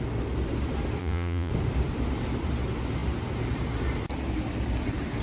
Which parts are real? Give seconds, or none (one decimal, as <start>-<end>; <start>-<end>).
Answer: 0.0-1.0; 1.5-5.2